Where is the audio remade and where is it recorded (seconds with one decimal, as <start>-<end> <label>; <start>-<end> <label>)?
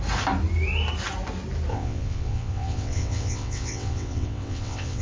0.0-1.7 recorded; 1.7-5.0 remade